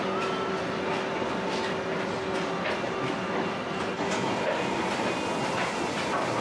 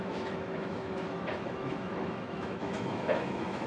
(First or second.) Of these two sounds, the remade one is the second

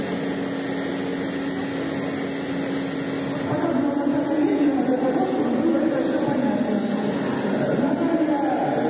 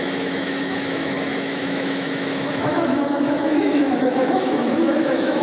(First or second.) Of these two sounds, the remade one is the second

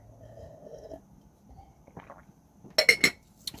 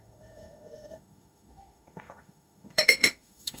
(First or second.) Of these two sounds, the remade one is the second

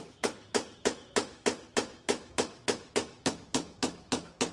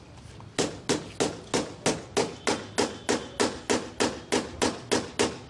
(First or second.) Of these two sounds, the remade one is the first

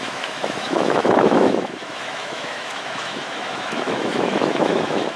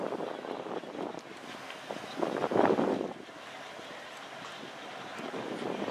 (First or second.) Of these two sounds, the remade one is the first